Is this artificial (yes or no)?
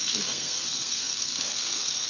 yes